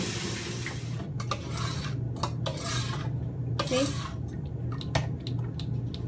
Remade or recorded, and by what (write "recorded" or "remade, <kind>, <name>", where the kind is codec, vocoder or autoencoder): recorded